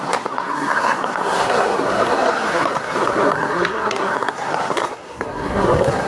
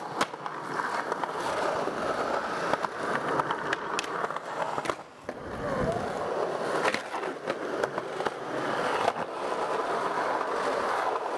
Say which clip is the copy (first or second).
first